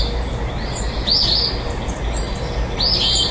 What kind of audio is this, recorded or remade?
recorded